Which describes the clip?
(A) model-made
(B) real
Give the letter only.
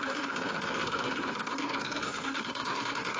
A